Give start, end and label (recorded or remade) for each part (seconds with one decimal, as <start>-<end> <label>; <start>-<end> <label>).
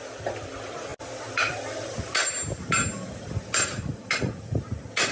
0.0-5.1 recorded